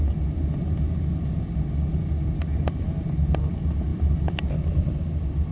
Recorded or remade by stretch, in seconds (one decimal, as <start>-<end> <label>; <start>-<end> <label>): 0.0-3.9 recorded; 3.9-4.9 remade; 4.9-5.5 recorded